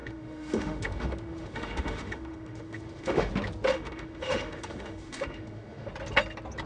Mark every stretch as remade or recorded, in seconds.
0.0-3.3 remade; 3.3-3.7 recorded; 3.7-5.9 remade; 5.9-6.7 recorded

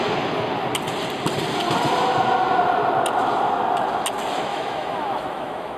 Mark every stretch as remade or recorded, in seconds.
0.0-4.5 recorded; 4.5-5.8 remade

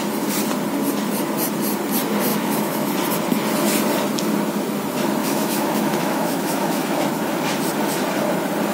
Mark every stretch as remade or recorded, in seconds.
0.0-2.3 recorded; 2.3-2.9 remade; 2.9-5.2 recorded; 5.2-7.1 remade; 7.1-8.7 recorded

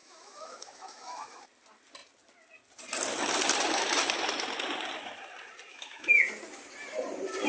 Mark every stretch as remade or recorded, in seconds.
0.0-1.4 remade; 1.4-5.7 recorded; 5.7-6.2 remade; 6.2-7.5 recorded

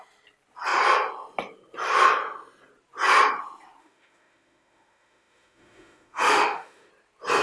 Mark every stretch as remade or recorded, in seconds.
0.0-3.8 recorded; 3.8-6.9 remade; 6.9-7.4 recorded

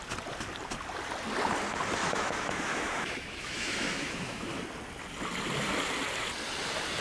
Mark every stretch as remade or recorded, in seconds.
0.0-2.0 recorded; 2.0-4.6 remade; 4.6-7.0 recorded

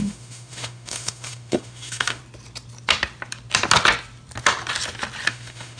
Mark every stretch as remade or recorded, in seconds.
0.0-2.2 remade; 2.2-5.3 recorded; 5.3-5.8 remade

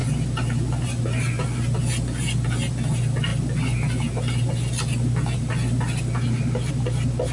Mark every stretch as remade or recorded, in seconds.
0.0-7.3 recorded